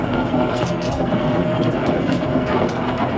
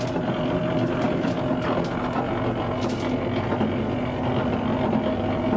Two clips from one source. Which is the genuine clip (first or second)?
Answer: second